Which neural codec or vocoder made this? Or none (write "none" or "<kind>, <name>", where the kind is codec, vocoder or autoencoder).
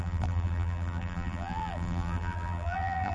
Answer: vocoder, BigVGAN v2